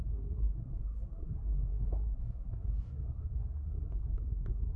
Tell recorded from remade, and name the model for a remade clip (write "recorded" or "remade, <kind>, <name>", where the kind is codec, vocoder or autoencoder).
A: remade, codec, SNAC